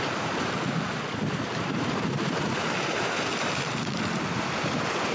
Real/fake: real